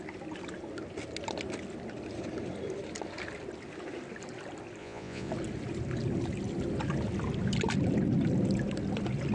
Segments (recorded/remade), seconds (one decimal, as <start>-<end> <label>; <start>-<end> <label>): 0.0-4.8 recorded; 4.8-5.3 remade; 5.3-9.3 recorded